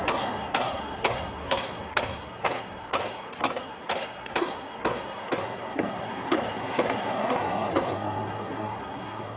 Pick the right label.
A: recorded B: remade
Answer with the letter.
B